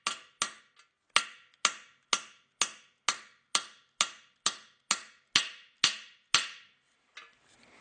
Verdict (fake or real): real